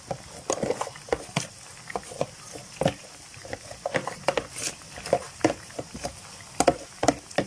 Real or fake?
fake